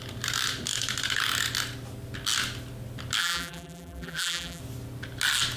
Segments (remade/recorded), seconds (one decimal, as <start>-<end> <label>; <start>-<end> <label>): 0.0-3.2 recorded; 3.2-4.6 remade; 4.6-5.6 recorded